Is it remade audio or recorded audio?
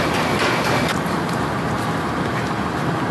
recorded